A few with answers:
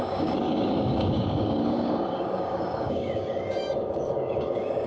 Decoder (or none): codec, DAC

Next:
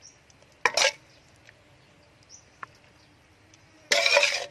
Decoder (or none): none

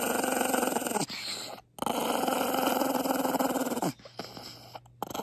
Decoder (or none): none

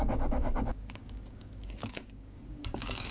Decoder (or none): codec, DAC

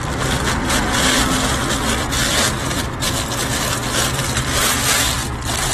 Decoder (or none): none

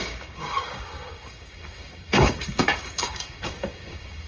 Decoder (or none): codec, DAC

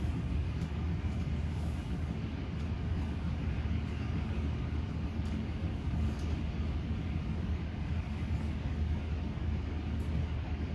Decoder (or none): codec, DAC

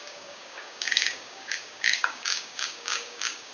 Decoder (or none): codec, DAC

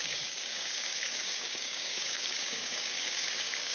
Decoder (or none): codec, DAC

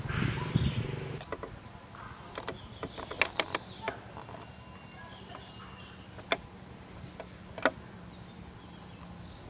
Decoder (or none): none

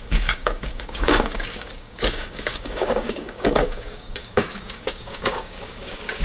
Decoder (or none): codec, DAC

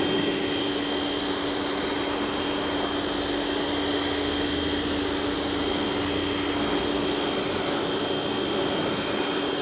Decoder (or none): none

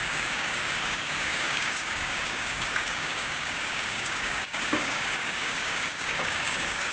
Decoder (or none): codec, DAC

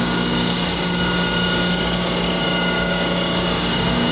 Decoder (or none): codec, DAC